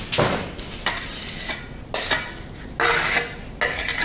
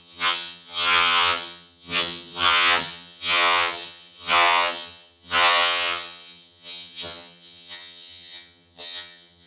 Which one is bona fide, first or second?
first